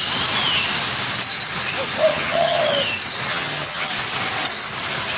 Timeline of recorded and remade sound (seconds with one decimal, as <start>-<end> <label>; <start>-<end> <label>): 0.0-2.1 recorded; 2.1-2.6 remade; 2.6-3.3 recorded; 3.3-3.9 remade; 3.9-5.2 recorded